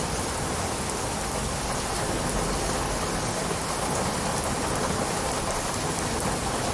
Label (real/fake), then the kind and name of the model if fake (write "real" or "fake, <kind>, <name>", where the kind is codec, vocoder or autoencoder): real